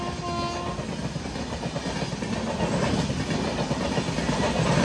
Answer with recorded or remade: recorded